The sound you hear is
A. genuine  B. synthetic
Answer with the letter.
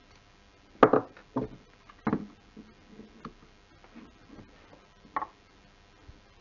A